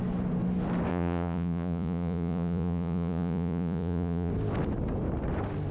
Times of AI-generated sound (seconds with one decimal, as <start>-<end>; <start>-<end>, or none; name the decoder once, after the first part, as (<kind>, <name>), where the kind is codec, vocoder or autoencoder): 0.9-4.3 (vocoder, Vocos)